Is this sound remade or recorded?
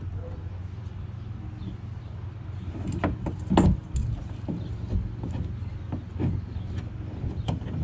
recorded